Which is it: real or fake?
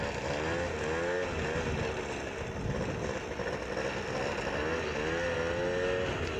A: real